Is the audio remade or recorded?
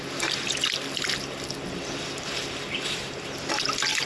remade